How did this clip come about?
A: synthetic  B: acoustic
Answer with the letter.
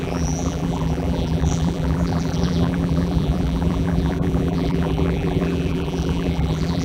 A